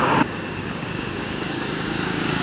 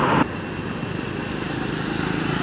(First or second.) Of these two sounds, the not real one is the first